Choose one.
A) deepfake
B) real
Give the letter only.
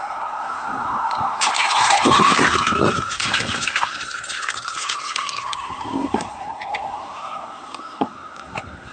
A